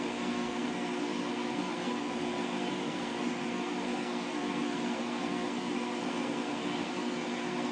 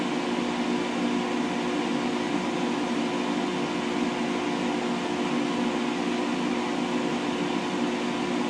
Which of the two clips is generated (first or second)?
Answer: first